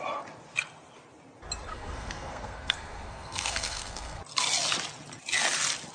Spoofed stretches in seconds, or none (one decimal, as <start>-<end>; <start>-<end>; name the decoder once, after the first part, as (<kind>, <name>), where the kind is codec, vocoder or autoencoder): 1.7-4.2 (codec, SNAC)